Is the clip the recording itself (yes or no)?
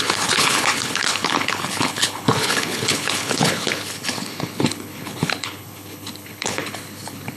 no